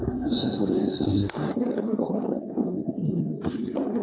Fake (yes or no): yes